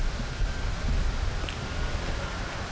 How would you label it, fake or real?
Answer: real